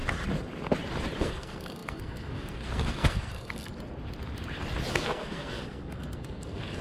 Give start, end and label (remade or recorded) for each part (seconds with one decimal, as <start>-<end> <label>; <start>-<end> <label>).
0.0-1.2 recorded; 1.2-3.7 remade; 3.7-4.9 recorded; 4.9-6.8 remade